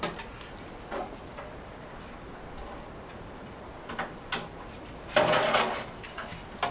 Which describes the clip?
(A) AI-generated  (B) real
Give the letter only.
B